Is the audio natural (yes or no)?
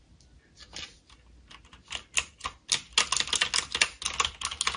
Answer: yes